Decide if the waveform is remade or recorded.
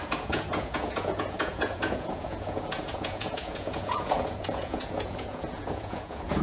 remade